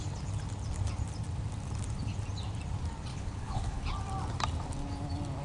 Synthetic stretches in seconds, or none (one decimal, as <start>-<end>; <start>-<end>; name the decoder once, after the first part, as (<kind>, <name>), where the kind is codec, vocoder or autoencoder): 3.1-3.8 (codec, HILCodec)